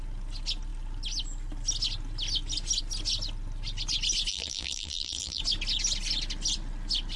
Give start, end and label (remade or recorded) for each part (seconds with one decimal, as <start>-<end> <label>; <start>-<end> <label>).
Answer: 0.0-4.3 recorded; 4.3-5.4 remade; 5.4-7.2 recorded